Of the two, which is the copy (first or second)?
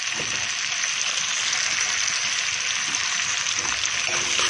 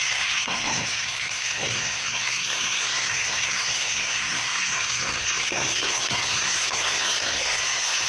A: second